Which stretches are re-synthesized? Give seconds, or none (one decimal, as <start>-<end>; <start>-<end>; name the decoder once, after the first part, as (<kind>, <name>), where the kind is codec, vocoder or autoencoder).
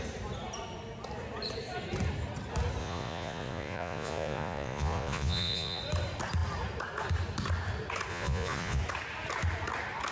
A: 2.8-5.8 (vocoder, Vocos); 8.1-8.8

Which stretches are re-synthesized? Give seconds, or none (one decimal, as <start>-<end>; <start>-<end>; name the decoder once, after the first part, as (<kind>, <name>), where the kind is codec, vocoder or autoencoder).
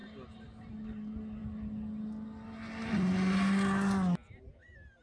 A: none